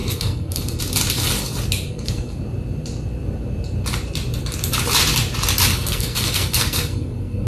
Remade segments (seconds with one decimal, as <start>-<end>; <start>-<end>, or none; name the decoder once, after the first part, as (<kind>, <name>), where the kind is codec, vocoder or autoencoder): 0.0-0.8 (codec, SNAC); 1.9-2.4; 5.7-7.5